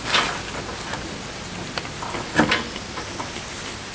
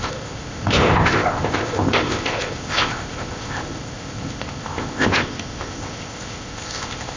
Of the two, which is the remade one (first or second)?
second